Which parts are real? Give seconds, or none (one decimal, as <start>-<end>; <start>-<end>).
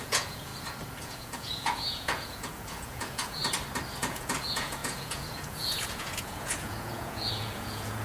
0.5-1.0; 3.4-4.0